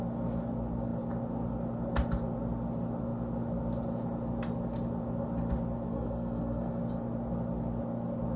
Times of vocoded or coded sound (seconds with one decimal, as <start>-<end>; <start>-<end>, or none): 5.9-6.8